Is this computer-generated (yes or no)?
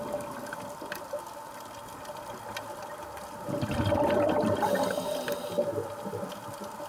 no